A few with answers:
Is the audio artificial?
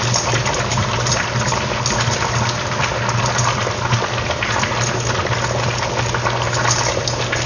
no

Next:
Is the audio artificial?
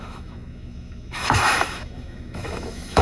yes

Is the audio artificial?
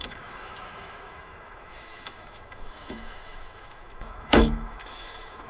yes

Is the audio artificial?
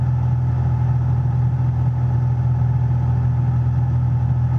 no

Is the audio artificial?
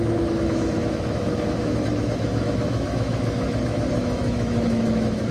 yes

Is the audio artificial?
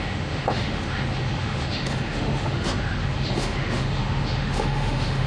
yes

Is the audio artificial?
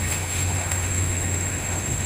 yes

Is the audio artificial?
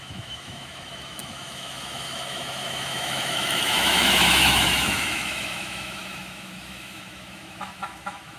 yes